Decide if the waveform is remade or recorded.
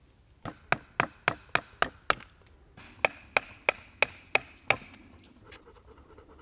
recorded